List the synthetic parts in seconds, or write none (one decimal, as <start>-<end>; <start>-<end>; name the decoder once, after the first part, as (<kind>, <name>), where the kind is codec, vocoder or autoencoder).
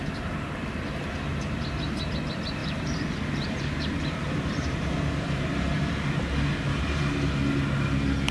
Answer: 1.3-2.1 (vocoder, BigVGAN v2); 2.6-7.0